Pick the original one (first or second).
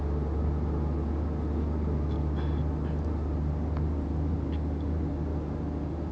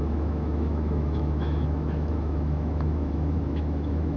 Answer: first